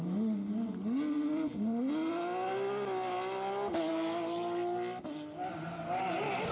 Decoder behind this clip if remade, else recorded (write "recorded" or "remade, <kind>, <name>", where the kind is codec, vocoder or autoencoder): recorded